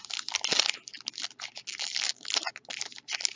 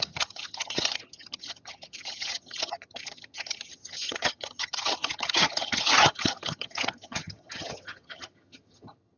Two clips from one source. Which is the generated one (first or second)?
second